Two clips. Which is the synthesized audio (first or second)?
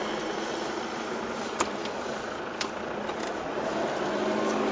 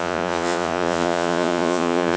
second